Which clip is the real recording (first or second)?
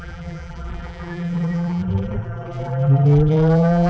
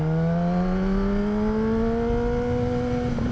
second